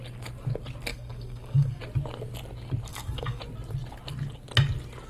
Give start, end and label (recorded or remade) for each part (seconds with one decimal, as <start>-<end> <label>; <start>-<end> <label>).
0.0-0.9 recorded; 0.9-1.8 remade; 1.8-2.9 recorded; 2.9-3.4 remade; 3.4-5.1 recorded